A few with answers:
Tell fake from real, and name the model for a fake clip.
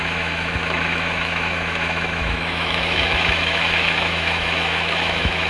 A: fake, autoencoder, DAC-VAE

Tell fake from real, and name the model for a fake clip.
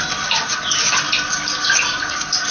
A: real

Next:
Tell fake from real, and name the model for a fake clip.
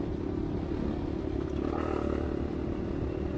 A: real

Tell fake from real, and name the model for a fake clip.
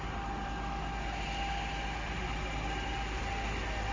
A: real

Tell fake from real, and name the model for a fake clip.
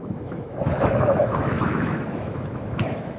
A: fake, autoencoder, DAC-VAE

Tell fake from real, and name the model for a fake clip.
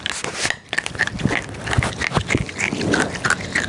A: real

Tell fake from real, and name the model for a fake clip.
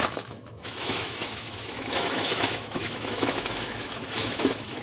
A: fake, autoencoder, DAC-VAE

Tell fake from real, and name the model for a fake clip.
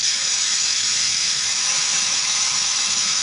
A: fake, autoencoder, DAC-VAE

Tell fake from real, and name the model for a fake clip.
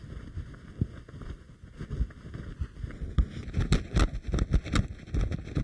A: real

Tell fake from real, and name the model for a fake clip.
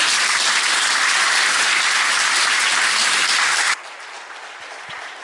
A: real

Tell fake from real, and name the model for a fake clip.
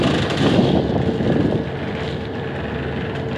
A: real